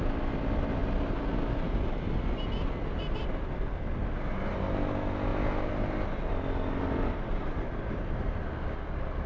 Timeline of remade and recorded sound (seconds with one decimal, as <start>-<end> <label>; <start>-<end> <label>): 0.0-9.3 recorded